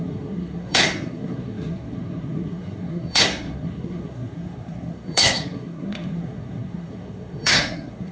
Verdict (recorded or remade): remade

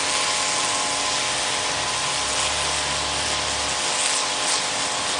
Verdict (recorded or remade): recorded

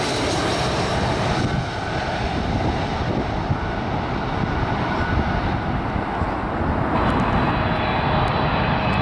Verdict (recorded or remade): recorded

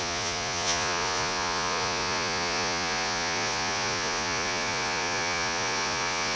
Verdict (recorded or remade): remade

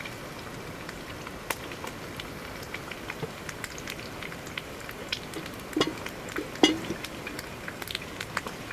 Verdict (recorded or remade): recorded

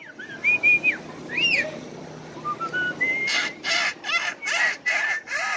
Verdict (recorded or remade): recorded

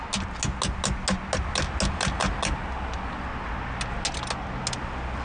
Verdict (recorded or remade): recorded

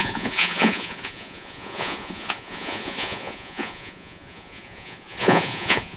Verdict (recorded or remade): remade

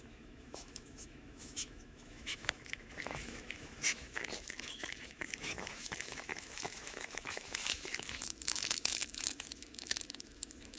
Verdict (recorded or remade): remade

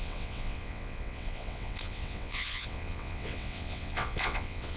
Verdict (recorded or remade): remade